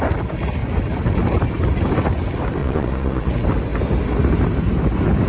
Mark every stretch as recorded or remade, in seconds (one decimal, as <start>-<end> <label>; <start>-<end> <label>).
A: 0.0-2.6 recorded; 2.6-3.3 remade; 3.3-5.3 recorded

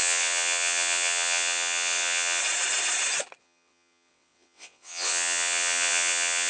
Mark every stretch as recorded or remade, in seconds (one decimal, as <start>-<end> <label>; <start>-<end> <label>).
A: 0.0-2.4 remade; 2.4-3.4 recorded; 3.4-6.5 remade

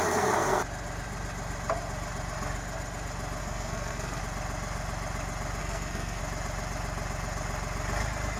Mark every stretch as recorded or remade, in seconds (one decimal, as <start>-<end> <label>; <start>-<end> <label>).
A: 0.0-0.6 remade; 0.6-3.4 recorded; 3.4-4.2 remade; 4.2-5.6 recorded; 5.6-6.2 remade; 6.2-8.4 recorded